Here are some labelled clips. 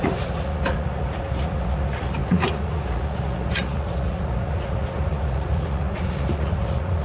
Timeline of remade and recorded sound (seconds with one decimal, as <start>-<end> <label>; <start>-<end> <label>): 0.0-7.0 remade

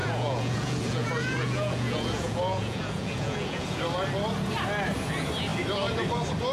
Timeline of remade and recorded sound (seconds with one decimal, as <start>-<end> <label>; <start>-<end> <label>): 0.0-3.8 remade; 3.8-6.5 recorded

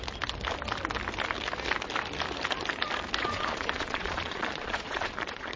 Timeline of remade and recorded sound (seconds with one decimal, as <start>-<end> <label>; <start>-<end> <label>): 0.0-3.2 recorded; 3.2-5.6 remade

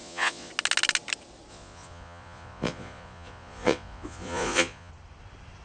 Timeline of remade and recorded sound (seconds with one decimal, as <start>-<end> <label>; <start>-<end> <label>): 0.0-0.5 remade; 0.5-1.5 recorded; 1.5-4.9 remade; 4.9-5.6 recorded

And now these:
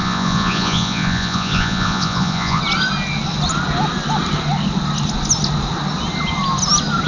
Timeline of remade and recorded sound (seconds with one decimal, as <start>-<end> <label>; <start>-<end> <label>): 0.0-2.6 remade; 2.6-7.1 recorded